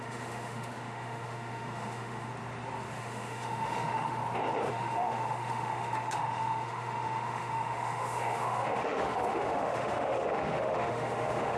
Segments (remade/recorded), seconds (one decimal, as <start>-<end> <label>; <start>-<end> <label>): 0.0-2.3 remade; 2.3-3.0 recorded; 3.0-4.2 remade; 4.2-4.7 recorded; 4.7-11.6 remade